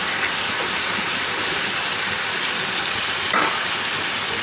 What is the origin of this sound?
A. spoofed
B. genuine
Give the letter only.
B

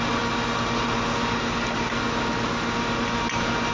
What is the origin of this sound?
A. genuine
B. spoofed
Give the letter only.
A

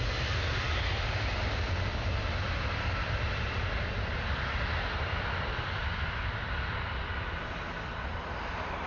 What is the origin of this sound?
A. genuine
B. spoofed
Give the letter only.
A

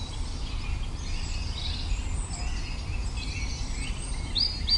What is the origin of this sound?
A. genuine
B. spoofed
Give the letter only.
A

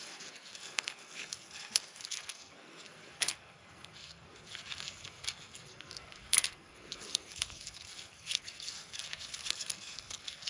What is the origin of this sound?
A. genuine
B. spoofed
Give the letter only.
B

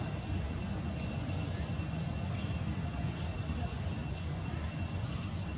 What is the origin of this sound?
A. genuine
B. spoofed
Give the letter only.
B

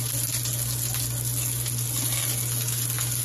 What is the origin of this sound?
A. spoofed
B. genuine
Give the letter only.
B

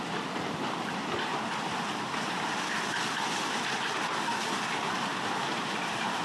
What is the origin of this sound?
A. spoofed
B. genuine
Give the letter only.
B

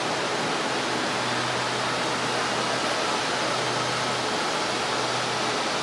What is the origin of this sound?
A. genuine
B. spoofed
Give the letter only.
A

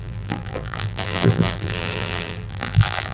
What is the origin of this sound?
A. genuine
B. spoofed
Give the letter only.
B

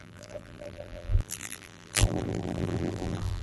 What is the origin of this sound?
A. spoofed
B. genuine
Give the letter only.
A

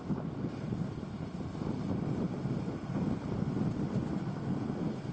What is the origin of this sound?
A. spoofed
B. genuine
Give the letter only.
B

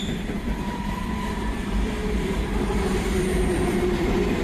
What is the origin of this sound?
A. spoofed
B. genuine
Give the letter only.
A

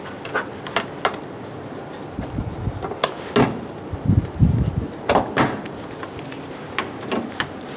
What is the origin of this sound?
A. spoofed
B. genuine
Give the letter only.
B